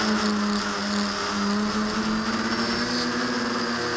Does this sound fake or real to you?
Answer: real